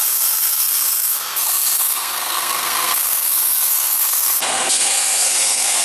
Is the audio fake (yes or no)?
yes